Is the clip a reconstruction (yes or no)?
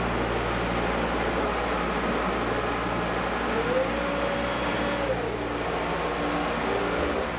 no